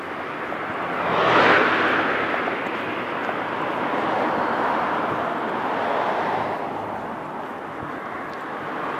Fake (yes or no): no